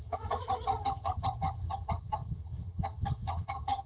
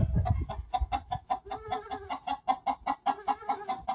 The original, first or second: second